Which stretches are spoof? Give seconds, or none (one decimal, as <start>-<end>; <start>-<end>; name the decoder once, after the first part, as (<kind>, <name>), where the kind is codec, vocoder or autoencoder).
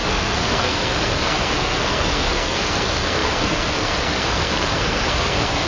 0.0-5.7 (codec, SNAC)